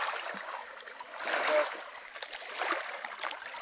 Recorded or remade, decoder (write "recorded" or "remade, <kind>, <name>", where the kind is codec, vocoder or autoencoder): recorded